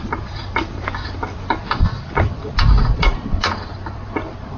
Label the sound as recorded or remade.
remade